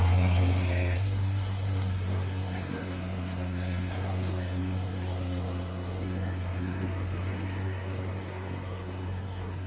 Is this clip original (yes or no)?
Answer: no